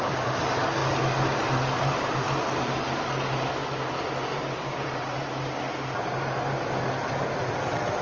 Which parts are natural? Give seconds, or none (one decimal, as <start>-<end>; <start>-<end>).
0.0-8.0